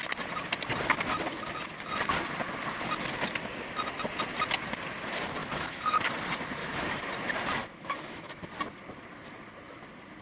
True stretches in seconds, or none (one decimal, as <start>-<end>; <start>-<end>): 0.0-5.4; 6.0-6.6; 7.1-7.6; 8.4-10.2